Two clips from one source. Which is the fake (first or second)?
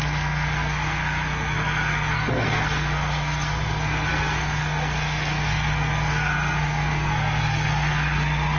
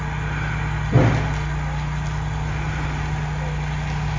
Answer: first